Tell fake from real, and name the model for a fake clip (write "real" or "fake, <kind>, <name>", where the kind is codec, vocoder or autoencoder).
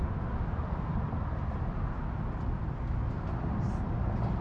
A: real